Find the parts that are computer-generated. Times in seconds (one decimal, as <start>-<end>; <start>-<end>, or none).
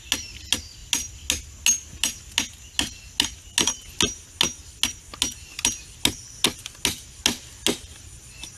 none